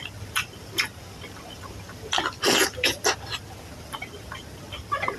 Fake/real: fake